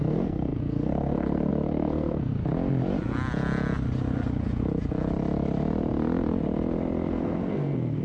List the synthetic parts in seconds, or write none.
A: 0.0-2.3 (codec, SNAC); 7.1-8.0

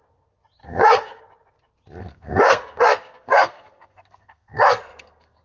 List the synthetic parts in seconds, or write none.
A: 0.6-1.2 (codec, SNAC); 2.0-5.4